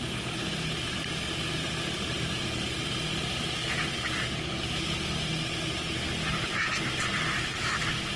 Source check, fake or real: real